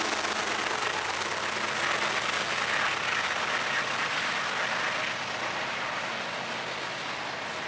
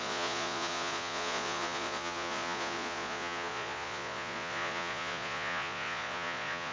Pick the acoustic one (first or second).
first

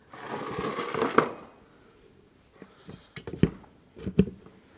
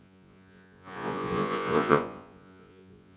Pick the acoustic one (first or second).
first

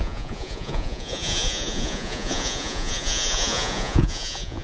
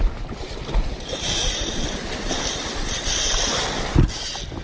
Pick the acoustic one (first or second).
second